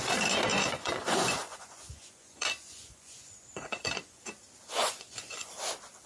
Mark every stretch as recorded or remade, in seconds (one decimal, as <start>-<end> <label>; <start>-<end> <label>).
0.0-0.5 recorded; 0.5-4.2 remade; 4.2-4.7 recorded; 4.7-5.5 remade; 5.5-6.1 recorded